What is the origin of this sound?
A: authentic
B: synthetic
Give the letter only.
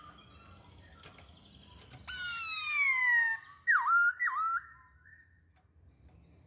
A